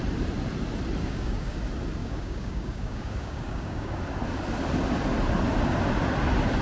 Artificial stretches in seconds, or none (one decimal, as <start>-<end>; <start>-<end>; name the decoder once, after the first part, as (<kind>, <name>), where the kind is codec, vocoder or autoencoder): 1.0-1.6 (codec, DAC); 2.0-4.0